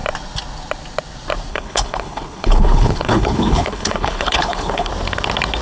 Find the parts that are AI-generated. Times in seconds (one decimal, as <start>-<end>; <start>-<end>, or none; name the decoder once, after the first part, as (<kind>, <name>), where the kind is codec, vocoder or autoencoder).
1.5-4.9 (codec, HILCodec)